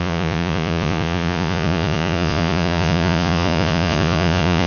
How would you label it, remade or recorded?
remade